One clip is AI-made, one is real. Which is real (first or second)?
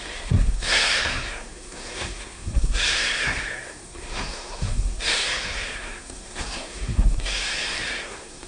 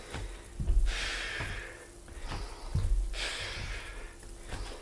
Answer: second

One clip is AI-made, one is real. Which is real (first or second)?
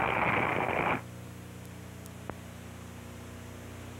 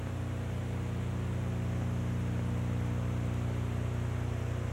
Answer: first